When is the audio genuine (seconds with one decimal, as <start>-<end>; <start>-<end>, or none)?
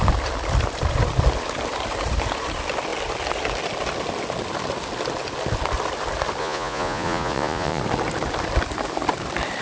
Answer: 0.0-6.4; 7.8-9.6